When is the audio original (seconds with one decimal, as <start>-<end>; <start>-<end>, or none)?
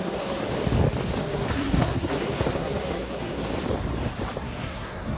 0.4-1.2; 3.5-4.4